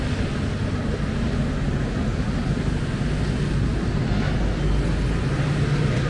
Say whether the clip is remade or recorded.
recorded